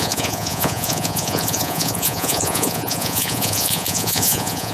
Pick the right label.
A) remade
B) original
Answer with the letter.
A